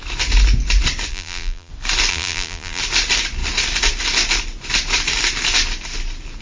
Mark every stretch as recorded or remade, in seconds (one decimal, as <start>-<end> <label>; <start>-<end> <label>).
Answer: 0.0-1.1 recorded; 1.1-1.7 remade; 1.7-2.1 recorded; 2.1-2.8 remade; 2.8-6.4 recorded